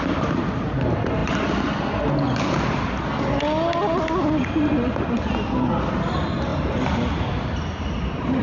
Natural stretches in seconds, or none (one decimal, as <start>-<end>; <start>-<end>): 0.0-8.4